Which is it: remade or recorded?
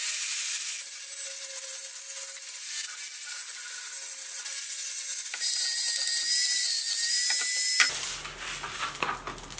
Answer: recorded